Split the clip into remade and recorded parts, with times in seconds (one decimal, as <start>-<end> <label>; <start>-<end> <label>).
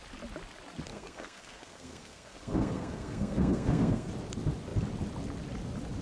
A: 0.0-0.9 recorded; 0.9-4.1 remade; 4.1-6.0 recorded